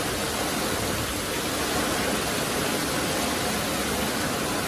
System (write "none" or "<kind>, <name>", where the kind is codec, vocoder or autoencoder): none